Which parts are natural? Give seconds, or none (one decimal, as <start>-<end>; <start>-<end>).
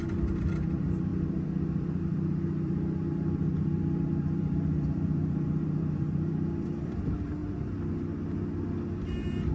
7.4-9.0